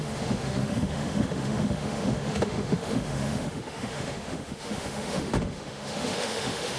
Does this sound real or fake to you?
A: fake